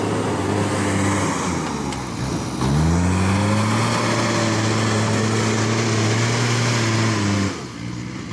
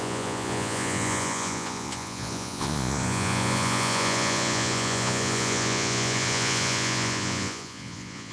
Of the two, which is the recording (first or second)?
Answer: first